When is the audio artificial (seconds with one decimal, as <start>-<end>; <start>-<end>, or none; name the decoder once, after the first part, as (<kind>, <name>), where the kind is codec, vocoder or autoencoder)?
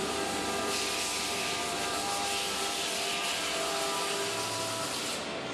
0.0-3.3 (vocoder, BigVGAN v2)